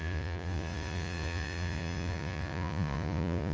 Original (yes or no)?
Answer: no